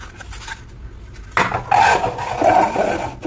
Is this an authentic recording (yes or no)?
yes